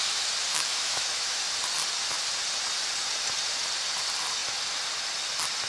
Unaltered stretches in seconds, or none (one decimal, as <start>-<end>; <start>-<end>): 0.0-0.5; 1.4-5.7